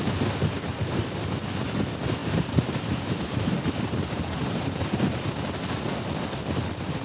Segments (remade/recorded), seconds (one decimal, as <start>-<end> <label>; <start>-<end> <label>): 0.0-0.7 recorded; 0.7-1.3 remade; 1.3-2.2 recorded; 2.2-4.8 remade; 4.8-7.0 recorded